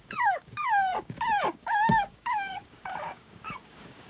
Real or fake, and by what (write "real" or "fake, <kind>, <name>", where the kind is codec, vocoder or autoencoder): fake, codec, DAC